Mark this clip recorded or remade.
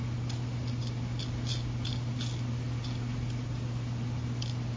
recorded